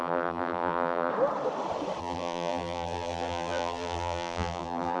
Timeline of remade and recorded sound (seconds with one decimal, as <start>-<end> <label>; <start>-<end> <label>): 0.0-1.1 remade; 1.1-2.0 recorded; 2.0-5.0 remade